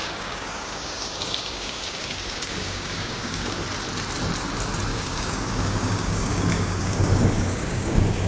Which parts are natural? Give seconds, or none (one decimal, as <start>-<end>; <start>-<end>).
3.6-4.9